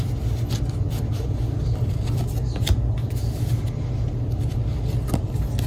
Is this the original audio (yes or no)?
yes